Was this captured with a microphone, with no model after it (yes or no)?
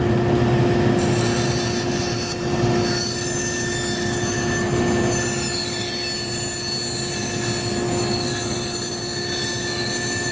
yes